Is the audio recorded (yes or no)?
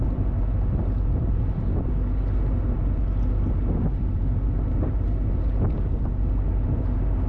yes